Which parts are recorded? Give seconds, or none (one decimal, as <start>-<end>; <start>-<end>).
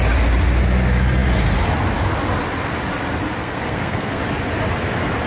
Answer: 0.0-3.4; 4.2-5.3